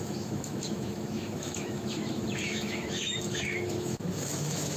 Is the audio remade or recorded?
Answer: remade